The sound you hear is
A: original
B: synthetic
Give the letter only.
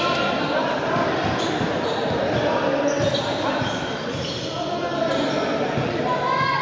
A